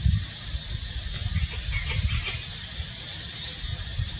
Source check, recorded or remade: recorded